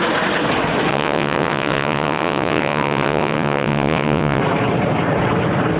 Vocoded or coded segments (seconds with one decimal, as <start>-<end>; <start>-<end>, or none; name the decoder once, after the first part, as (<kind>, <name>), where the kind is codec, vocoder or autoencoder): 0.9-4.4 (vocoder, WaveNeXt)